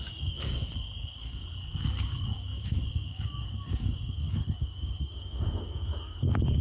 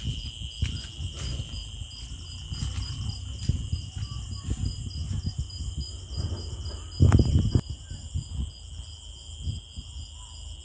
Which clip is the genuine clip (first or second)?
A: second